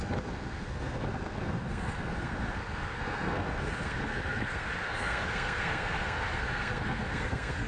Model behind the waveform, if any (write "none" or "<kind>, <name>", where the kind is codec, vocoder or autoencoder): codec, SNAC